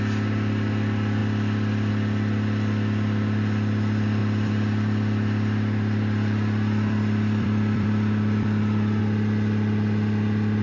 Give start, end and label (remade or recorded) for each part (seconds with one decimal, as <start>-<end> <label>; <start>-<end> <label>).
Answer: 0.0-4.2 recorded; 4.2-9.0 remade; 9.0-10.6 recorded